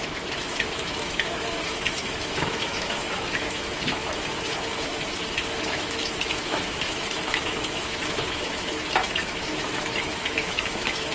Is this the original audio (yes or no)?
no